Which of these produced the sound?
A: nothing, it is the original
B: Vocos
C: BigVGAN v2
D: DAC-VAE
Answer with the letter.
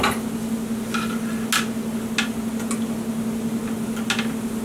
A